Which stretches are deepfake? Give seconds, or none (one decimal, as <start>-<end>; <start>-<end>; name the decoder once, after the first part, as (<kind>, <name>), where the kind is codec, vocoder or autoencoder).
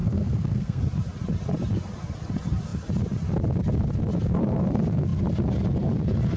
0.0-0.8 (codec, SNAC)